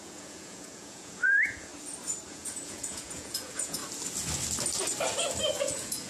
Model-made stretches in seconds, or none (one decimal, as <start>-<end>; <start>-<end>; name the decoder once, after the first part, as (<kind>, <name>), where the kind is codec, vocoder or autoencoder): 0.0-1.7 (vocoder, Vocos); 2.3-3.8; 5.6-6.1